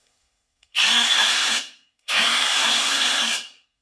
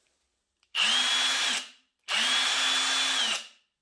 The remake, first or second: first